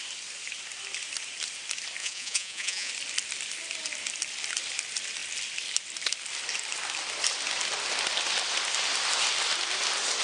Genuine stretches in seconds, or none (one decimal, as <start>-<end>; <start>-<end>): 0.0-2.0; 2.9-10.2

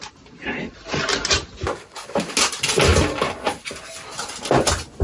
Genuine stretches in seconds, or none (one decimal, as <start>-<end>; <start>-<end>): 0.0-5.0

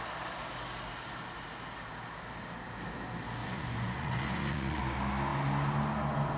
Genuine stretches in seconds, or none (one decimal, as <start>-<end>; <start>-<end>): 0.0-3.4; 4.8-6.4

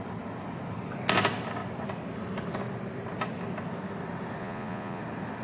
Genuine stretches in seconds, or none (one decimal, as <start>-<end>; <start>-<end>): 0.0-4.4; 5.0-5.4

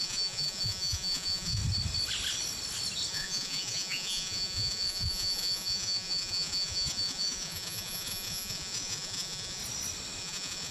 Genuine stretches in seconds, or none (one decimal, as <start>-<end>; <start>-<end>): 1.6-3.1; 9.6-10.2